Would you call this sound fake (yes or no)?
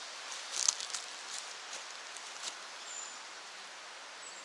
no